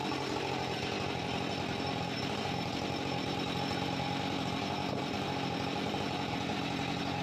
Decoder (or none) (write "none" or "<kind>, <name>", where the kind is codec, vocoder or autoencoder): none